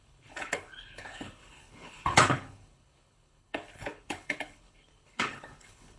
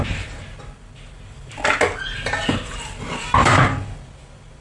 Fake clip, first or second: first